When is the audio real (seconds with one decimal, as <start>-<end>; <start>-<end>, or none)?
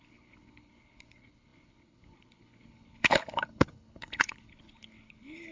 none